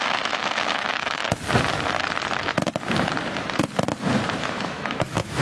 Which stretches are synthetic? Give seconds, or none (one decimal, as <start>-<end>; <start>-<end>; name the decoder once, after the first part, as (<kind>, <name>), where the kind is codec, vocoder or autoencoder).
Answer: 0.0-1.2 (autoencoder, DAC-VAE); 4.4-5.4